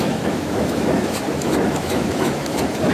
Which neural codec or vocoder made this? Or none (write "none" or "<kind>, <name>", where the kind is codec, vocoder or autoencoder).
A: autoencoder, DAC-VAE